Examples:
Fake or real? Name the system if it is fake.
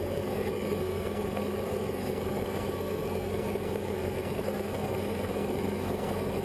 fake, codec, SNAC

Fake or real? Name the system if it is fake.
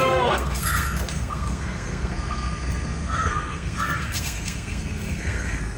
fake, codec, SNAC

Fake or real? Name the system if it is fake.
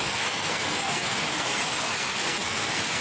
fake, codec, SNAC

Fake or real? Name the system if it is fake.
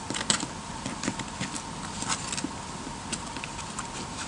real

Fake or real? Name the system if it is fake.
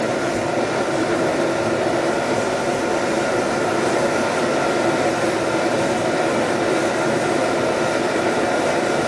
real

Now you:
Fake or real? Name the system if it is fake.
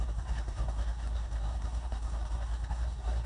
fake, codec, SNAC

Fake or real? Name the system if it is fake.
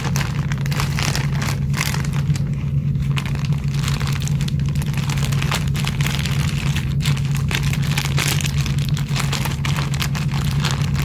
real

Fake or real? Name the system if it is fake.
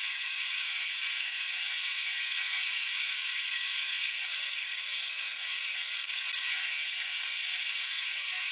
fake, codec, SNAC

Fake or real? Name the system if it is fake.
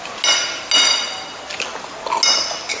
real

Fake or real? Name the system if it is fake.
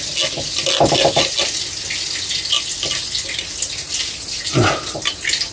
real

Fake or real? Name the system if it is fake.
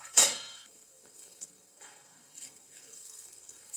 fake, codec, SNAC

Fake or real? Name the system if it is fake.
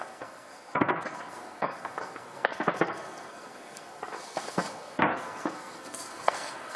fake, codec, SNAC